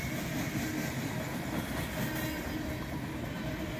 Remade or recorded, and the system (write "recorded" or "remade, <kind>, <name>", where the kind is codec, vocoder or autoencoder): recorded